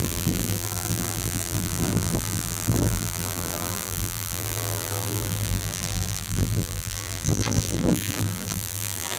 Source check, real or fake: fake